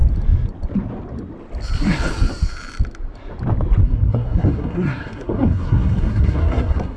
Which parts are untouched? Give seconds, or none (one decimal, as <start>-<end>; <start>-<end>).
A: 0.0-3.8